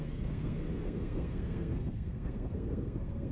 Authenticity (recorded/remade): remade